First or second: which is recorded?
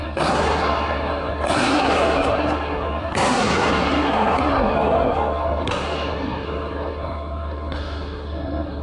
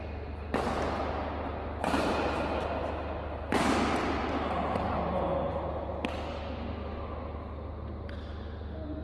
second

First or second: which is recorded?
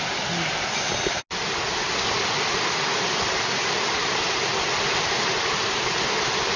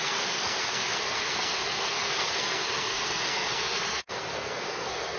first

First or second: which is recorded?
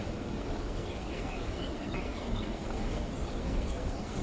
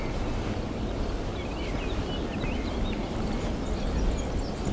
second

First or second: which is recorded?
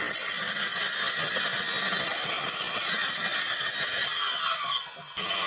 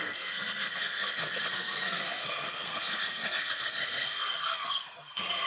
first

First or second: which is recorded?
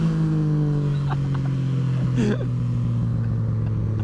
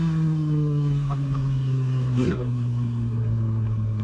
first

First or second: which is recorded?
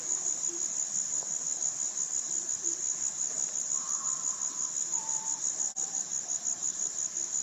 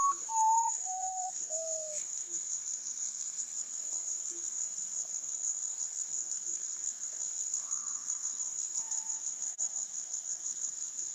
first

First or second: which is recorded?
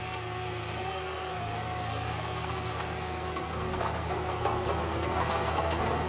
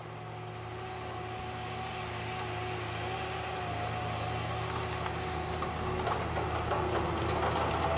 second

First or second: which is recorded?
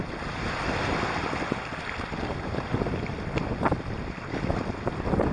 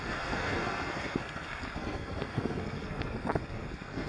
first